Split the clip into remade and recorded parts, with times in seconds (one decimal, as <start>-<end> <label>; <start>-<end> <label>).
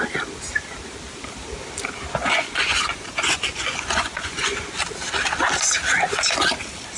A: 0.0-2.2 recorded; 2.2-4.7 remade; 4.7-7.0 recorded